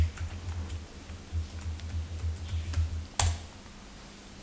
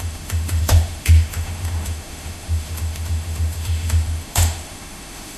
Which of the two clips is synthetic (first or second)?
second